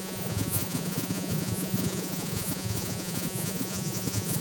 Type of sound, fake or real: fake